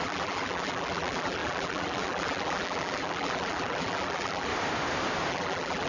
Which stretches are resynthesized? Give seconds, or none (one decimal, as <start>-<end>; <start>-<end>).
0.0-4.5; 5.3-5.9